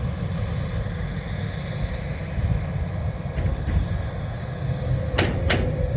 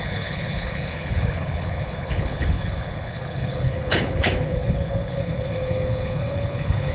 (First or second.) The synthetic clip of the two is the second